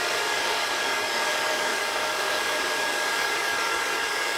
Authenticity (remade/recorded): remade